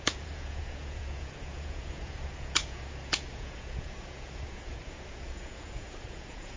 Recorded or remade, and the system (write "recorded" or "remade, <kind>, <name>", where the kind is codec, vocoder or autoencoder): remade, vocoder, Vocos